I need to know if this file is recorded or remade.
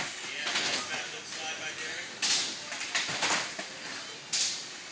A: recorded